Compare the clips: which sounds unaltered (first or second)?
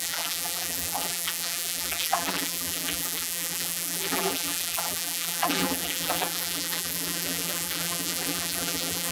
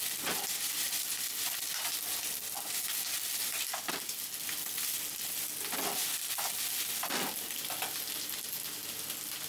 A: second